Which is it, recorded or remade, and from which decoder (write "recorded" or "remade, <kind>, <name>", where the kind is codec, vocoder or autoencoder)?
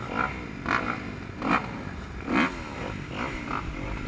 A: recorded